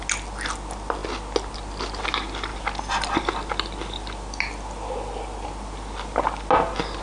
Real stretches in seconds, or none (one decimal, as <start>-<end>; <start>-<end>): 0.0-7.0